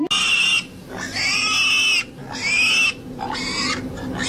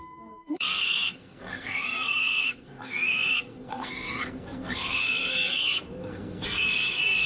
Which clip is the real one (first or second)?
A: first